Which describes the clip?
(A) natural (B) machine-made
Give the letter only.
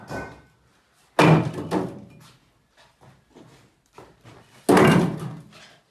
A